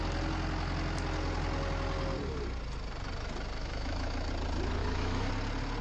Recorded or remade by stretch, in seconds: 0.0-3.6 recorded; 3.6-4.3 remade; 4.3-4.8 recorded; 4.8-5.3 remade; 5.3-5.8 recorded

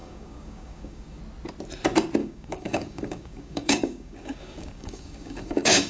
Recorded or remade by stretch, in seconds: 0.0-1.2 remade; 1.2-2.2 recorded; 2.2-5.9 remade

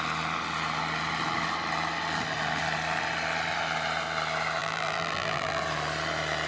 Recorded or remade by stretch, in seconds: 0.0-4.6 recorded; 4.6-5.6 remade; 5.6-6.5 recorded

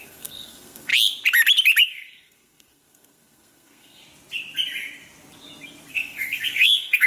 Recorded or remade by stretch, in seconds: 0.0-0.9 remade; 0.9-1.8 recorded; 1.8-4.0 remade; 4.0-5.9 recorded; 5.9-7.1 remade

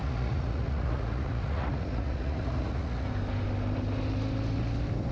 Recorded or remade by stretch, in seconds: 0.0-3.1 remade; 3.1-5.1 recorded

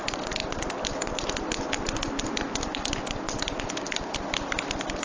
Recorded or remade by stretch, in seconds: 0.0-5.0 recorded

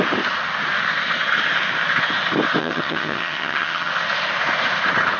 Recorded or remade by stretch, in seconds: 0.0-2.6 recorded; 2.6-3.9 remade; 3.9-5.2 recorded